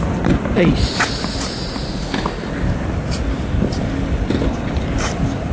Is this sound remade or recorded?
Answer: recorded